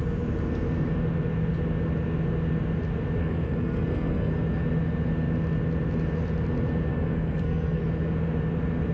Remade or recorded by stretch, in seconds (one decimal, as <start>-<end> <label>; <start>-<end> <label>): 0.0-3.2 recorded; 3.2-4.3 remade; 4.3-6.9 recorded; 6.9-7.8 remade; 7.8-8.9 recorded